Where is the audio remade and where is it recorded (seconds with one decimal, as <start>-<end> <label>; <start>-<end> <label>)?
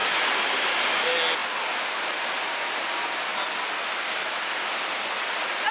0.0-5.7 recorded